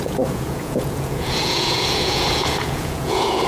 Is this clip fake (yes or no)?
yes